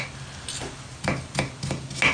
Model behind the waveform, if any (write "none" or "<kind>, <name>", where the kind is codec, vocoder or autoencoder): none